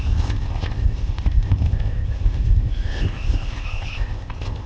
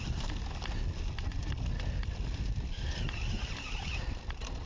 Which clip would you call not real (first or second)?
first